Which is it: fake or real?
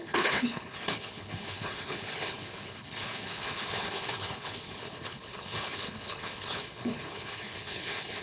fake